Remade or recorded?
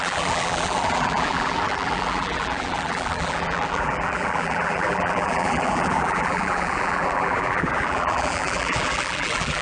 remade